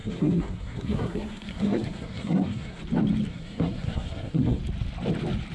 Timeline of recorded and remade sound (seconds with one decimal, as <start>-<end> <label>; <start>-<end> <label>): 0.0-2.8 remade; 2.8-3.3 recorded; 3.3-4.6 remade; 4.6-5.5 recorded